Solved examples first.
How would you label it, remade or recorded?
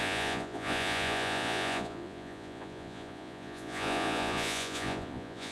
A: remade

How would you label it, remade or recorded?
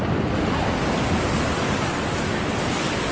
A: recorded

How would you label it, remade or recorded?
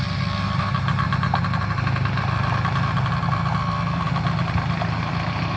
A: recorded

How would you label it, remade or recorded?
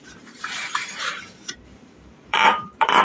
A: remade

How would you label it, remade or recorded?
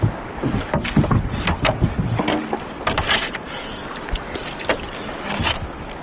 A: recorded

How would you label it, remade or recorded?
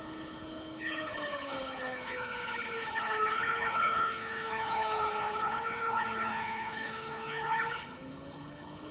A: remade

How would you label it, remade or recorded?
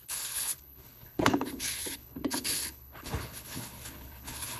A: remade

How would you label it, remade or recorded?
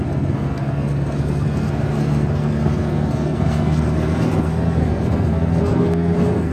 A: remade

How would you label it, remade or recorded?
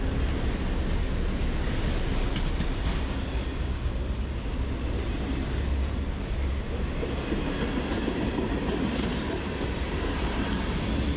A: recorded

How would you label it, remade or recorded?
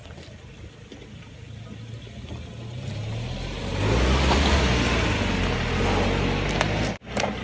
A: recorded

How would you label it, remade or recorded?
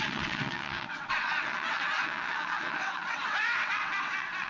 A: remade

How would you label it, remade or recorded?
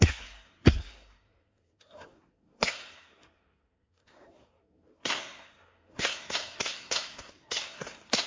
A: remade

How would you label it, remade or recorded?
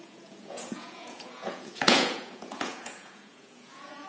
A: remade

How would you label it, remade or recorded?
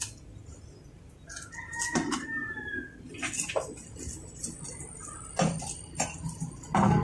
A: recorded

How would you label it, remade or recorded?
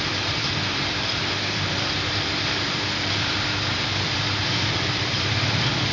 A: remade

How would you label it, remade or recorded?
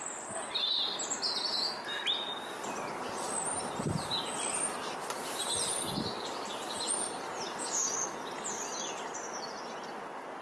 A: recorded